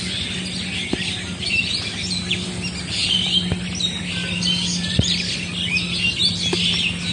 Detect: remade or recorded recorded